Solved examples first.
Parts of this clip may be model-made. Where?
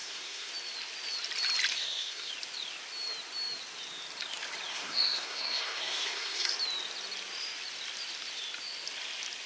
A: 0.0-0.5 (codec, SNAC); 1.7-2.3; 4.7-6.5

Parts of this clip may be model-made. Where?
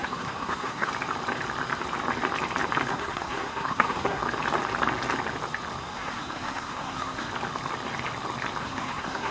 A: 0.0-0.9 (codec, SNAC); 2.9-4.2; 5.8-7.3; 8.6-9.3